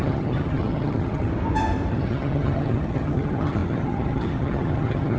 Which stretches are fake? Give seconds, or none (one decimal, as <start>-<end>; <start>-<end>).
0.0-1.3; 1.9-5.2